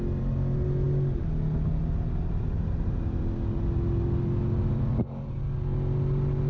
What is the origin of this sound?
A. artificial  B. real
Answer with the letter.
B